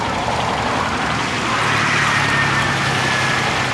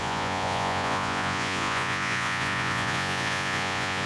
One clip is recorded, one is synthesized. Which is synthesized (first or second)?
second